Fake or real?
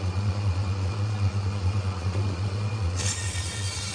fake